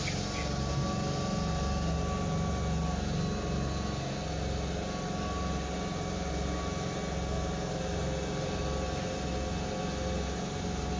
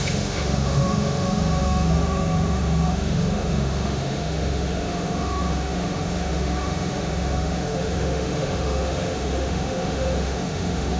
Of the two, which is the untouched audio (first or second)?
first